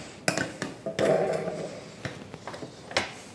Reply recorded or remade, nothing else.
recorded